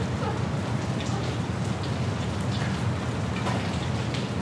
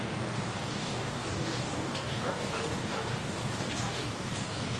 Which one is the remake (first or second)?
second